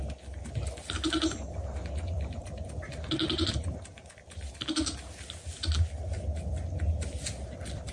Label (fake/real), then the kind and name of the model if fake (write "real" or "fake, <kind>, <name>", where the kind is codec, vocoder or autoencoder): real